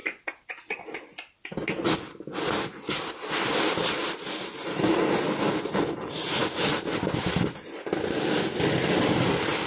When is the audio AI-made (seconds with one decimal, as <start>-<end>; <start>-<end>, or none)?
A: none